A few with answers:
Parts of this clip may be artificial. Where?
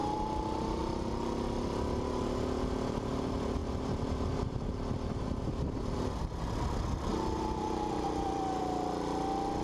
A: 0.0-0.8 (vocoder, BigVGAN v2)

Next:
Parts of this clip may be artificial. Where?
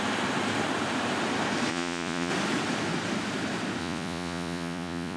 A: 1.7-2.3 (vocoder, Vocos); 3.8-5.2